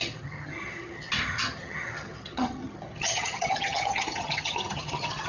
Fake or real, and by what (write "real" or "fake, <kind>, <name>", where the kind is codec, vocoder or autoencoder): fake, vocoder, HiFi-GAN